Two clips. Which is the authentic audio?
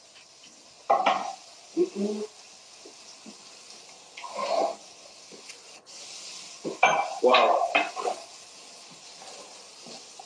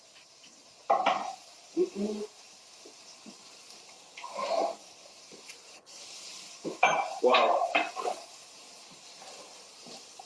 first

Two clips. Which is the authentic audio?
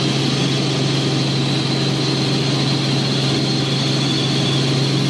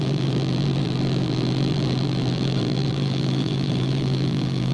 first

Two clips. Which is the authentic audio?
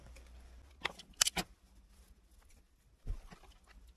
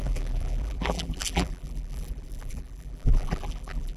first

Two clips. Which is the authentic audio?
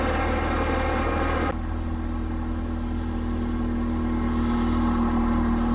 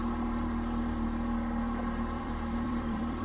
first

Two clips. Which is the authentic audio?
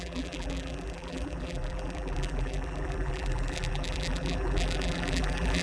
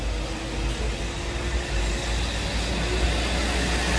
second